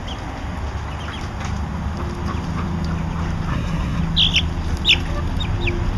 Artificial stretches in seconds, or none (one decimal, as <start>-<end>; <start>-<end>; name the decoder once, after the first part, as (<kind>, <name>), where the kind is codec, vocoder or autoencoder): 3.5-4.0 (codec, SNAC)